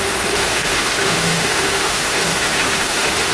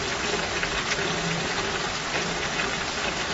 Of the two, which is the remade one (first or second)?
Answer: first